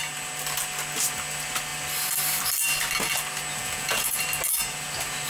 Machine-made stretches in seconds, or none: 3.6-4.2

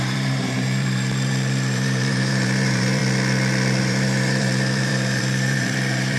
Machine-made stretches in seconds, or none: 0.0-3.0; 3.8-6.2